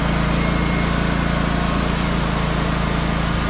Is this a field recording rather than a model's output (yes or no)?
yes